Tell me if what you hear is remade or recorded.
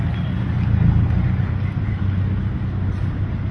recorded